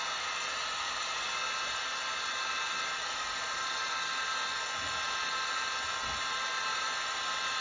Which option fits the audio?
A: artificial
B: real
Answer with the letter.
B